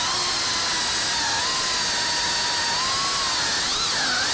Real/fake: real